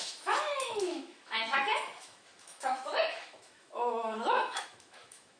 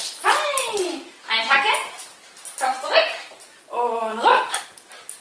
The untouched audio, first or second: second